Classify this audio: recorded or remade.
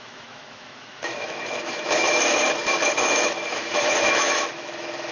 remade